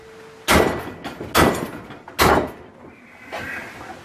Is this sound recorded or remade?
recorded